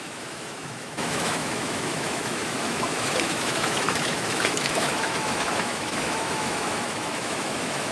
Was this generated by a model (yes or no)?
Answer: yes